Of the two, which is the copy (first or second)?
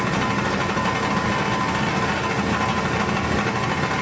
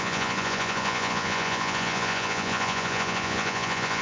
second